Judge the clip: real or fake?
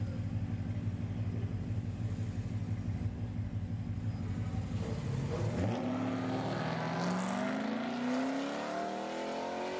real